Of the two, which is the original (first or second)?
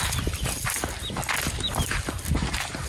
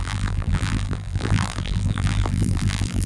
first